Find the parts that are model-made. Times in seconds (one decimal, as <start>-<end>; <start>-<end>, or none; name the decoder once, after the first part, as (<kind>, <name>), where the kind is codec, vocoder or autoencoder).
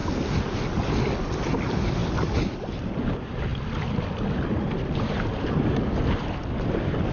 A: none